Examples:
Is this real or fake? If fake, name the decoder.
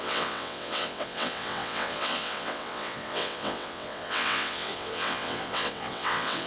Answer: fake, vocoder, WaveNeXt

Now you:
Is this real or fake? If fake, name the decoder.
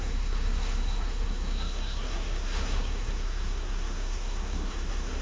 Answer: fake, codec, SNAC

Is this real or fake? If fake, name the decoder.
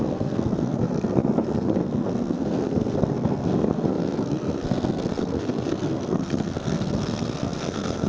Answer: fake, codec, SNAC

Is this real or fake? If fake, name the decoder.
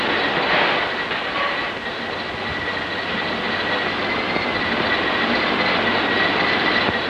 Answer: real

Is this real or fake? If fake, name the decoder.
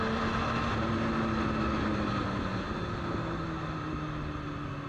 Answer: real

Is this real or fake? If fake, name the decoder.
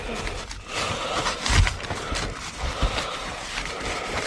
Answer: real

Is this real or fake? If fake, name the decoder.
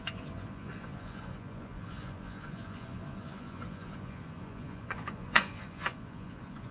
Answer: fake, vocoder, Vocos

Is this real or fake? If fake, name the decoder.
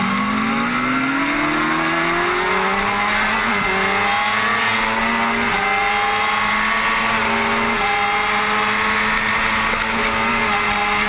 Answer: real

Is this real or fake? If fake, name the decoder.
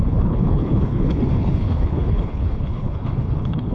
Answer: fake, codec, HILCodec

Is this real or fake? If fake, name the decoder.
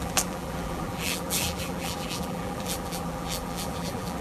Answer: fake, vocoder, BigVGAN v2